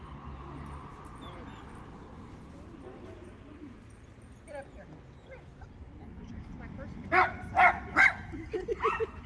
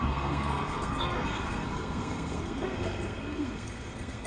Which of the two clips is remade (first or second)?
second